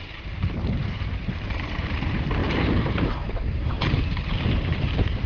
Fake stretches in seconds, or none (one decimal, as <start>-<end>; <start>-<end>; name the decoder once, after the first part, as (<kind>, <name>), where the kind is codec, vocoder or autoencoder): 0.0-5.3 (vocoder, BigVGAN v2)